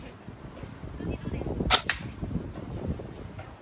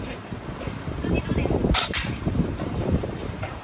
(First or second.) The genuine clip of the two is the first